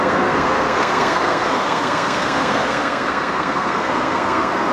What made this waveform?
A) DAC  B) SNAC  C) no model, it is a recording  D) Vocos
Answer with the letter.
B